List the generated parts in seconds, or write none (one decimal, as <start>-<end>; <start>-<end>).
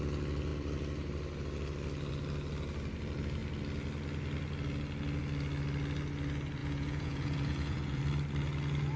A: 6.6-8.0